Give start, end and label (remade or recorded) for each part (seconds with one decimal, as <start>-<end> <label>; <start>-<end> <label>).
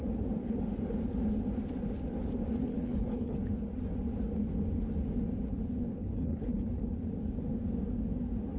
0.0-2.7 recorded; 2.7-3.4 remade; 3.4-5.9 recorded; 5.9-6.8 remade; 6.8-8.6 recorded